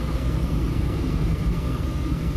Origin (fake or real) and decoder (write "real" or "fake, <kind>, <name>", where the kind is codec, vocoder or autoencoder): fake, codec, SNAC